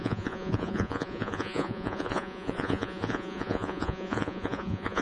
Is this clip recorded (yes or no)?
no